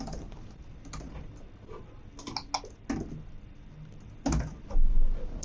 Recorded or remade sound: recorded